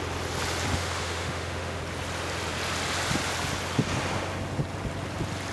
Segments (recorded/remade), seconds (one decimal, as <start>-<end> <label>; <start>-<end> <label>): 0.0-0.7 recorded; 0.7-1.8 remade; 1.8-5.5 recorded